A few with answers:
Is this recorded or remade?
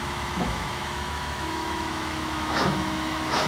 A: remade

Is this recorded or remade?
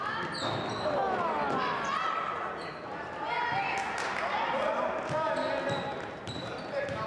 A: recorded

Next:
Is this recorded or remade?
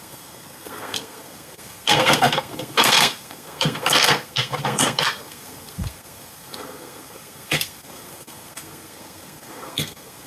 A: remade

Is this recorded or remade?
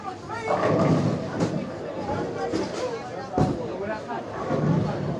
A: recorded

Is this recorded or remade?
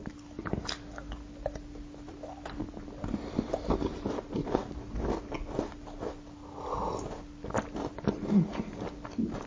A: recorded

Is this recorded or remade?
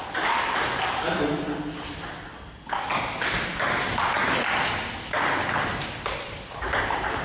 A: recorded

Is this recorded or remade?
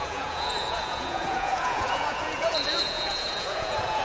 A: remade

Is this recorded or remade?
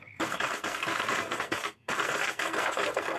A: remade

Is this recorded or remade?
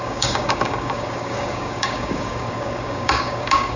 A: remade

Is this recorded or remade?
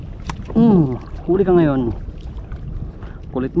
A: recorded